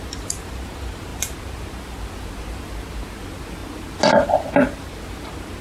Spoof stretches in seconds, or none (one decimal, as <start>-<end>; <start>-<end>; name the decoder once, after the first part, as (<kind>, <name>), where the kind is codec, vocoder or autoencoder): none